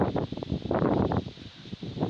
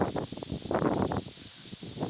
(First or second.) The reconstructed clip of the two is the first